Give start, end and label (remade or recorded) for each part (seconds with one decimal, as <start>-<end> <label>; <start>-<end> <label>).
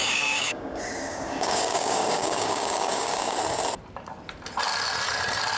0.0-3.4 remade; 3.4-5.6 recorded